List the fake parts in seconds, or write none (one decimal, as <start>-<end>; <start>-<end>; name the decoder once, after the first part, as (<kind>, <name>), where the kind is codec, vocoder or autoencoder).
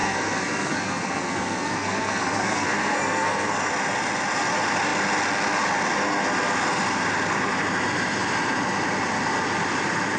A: 0.0-3.7 (codec, SNAC)